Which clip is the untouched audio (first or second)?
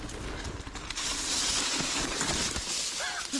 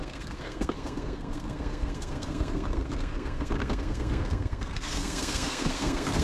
first